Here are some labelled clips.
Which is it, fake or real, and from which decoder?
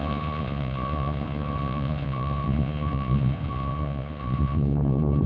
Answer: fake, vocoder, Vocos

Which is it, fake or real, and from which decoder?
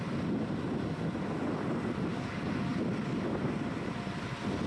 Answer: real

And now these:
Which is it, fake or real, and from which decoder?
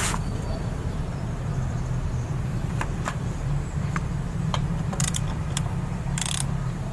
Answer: fake, vocoder, BigVGAN v2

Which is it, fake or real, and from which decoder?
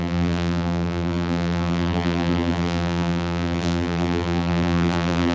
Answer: fake, vocoder, BigVGAN v2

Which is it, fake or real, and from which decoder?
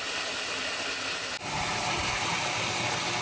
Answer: real